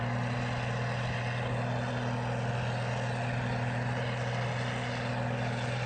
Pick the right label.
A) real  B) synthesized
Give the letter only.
A